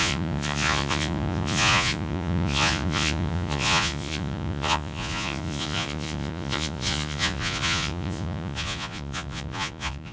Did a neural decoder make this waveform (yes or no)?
yes